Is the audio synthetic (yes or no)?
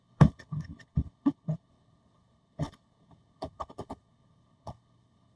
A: yes